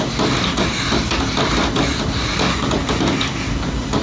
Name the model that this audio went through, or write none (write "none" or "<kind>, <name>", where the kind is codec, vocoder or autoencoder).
none